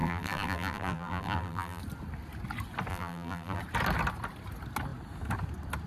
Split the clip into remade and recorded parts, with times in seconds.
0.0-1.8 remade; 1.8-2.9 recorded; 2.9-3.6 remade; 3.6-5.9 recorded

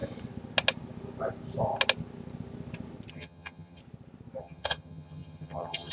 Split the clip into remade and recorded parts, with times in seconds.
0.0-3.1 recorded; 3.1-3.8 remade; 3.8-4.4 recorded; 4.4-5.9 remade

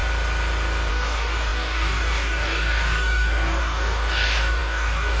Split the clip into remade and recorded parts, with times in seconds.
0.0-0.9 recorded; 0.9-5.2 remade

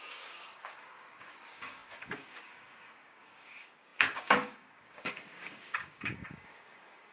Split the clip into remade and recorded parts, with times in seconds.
0.0-7.1 remade

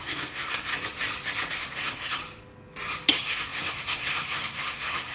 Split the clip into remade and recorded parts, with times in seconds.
0.0-0.7 remade; 0.7-1.5 recorded; 1.5-2.2 remade; 2.2-3.1 recorded; 3.1-5.1 remade

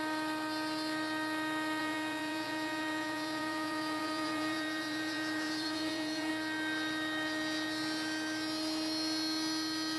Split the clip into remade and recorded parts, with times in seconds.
0.0-1.8 recorded; 1.8-6.3 remade; 6.3-10.0 recorded